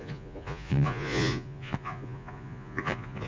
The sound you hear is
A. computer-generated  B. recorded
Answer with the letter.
A